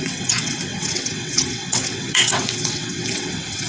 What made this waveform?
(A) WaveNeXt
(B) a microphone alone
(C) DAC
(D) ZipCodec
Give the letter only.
A